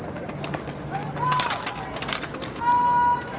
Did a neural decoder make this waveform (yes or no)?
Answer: no